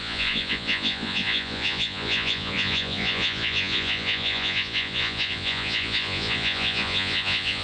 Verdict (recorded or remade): remade